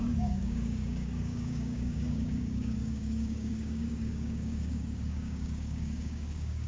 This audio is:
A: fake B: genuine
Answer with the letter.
A